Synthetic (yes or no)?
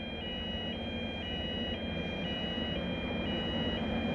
no